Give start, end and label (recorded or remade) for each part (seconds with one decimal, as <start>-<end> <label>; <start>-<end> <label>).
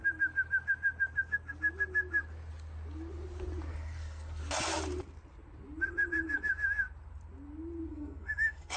0.0-3.7 recorded; 3.7-4.4 remade; 4.4-7.9 recorded; 7.9-8.8 remade